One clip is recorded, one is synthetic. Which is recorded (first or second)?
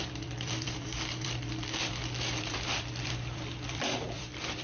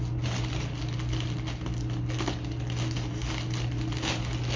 second